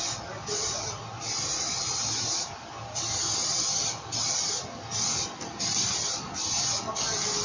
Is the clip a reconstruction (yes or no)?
no